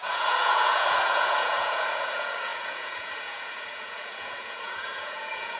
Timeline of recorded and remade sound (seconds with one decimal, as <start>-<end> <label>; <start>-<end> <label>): 0.0-5.6 remade

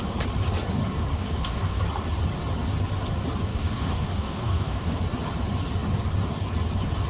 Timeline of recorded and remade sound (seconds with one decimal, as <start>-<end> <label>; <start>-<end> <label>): 0.0-1.1 recorded; 1.1-1.8 remade; 1.8-3.5 recorded; 3.5-5.0 remade; 5.0-7.1 recorded